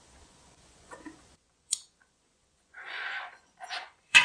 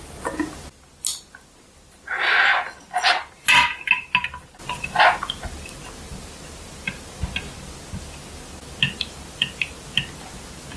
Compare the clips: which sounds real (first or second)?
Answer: second